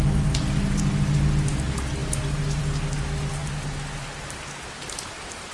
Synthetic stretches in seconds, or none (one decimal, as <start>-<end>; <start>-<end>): none